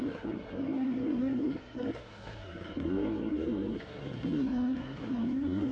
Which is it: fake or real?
fake